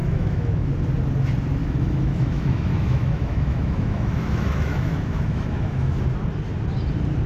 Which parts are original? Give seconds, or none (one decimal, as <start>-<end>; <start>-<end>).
0.7-1.6; 6.0-7.3